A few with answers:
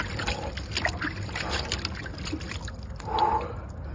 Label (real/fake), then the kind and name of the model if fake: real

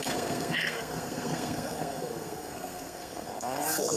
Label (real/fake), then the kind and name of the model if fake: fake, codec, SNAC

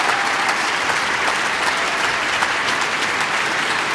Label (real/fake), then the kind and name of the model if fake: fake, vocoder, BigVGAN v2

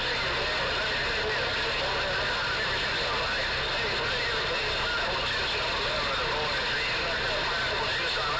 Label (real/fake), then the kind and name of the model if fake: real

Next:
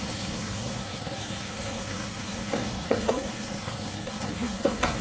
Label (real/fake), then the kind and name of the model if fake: fake, codec, SNAC